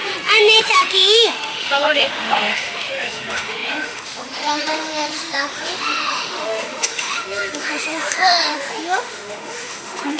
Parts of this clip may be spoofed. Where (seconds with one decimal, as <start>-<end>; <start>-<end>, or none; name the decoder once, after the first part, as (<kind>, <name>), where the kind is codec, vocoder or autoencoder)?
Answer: 0.6-10.2 (autoencoder, DAC-VAE)